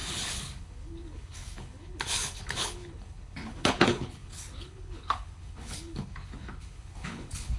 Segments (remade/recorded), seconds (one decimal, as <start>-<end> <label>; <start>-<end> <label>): 0.0-7.6 remade

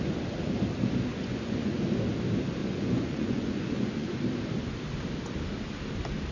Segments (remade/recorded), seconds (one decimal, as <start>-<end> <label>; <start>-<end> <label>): 0.0-1.1 recorded; 1.1-1.8 remade; 1.8-2.6 recorded; 2.6-4.2 remade; 4.2-6.3 recorded